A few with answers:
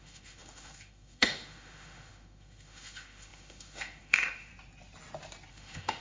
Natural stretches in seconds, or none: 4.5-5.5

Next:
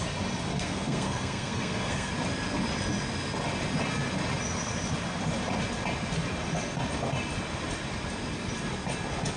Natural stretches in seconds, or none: 0.0-0.5; 2.1-9.4

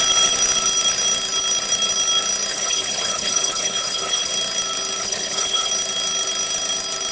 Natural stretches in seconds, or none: 0.0-2.5; 4.3-5.0; 5.7-7.1

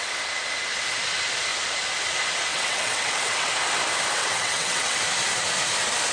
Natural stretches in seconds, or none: 0.0-2.5; 3.5-4.2; 5.0-6.1

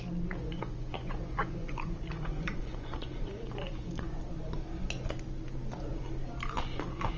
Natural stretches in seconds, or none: 0.0-0.4; 4.2-7.2

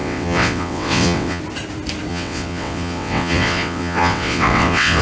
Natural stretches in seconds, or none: 1.4-2.1

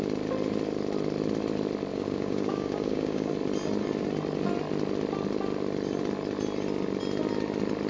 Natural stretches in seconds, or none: 0.0-1.9; 3.3-7.9